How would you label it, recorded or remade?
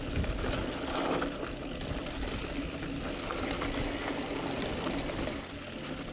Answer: recorded